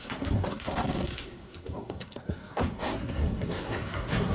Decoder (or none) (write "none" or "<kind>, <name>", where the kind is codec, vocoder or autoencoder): codec, SNAC